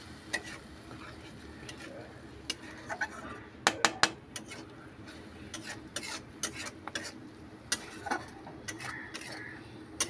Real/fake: real